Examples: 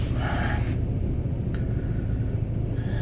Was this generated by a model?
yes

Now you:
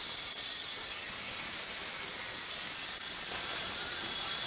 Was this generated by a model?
yes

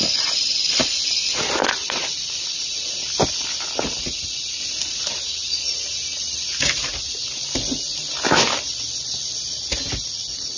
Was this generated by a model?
yes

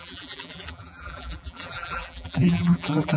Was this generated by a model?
yes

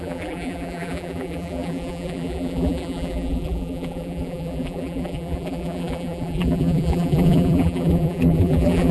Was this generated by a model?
yes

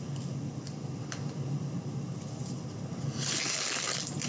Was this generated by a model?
no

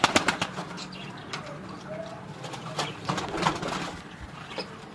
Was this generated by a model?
yes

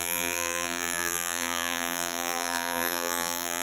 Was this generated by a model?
yes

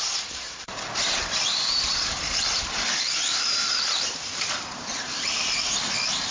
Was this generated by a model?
yes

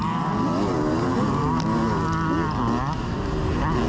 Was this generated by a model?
no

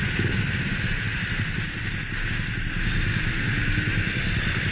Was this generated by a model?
no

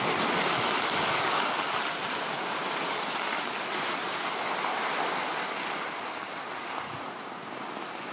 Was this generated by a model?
no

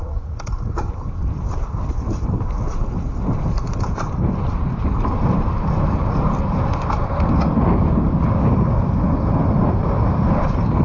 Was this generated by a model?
no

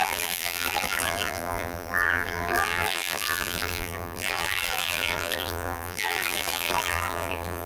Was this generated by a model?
yes